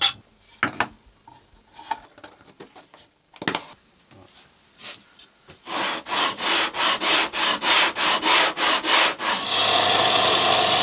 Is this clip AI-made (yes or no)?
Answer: no